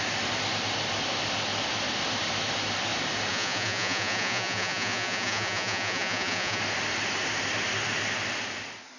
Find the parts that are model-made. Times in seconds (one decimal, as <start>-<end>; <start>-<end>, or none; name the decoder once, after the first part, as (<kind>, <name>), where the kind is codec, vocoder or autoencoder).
3.3-6.6 (vocoder, Vocos)